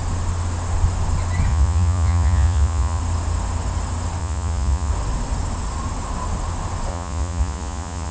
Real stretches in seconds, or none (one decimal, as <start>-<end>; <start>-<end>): 0.0-1.5; 3.0-4.2; 4.9-6.9